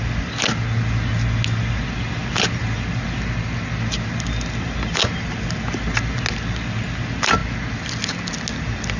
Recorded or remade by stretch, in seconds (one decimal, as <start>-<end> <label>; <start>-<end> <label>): 0.0-9.0 recorded